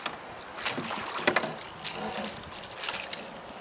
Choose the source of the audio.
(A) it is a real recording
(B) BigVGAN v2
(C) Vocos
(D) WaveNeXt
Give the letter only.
A